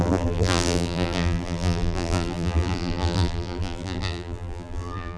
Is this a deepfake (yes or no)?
yes